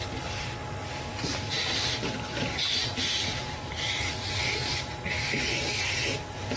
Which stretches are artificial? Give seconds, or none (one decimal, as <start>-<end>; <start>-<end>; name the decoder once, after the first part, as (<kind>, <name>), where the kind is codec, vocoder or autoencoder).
1.3-4.9 (vocoder, BigVGAN v2)